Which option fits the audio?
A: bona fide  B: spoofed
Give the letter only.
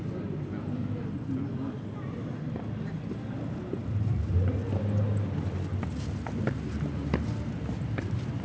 A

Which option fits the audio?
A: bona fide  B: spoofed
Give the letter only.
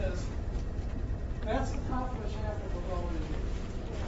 A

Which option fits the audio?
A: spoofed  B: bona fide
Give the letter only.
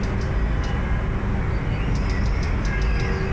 B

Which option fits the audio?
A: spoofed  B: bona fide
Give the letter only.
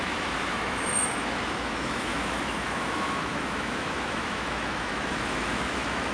A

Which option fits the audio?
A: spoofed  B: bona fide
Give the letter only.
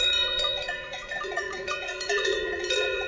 A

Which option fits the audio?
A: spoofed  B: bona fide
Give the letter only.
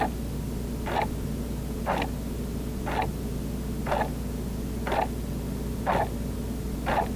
B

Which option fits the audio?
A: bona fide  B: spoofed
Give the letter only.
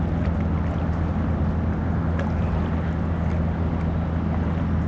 A